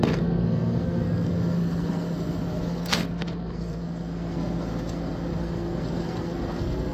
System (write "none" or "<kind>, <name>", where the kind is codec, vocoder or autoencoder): codec, SNAC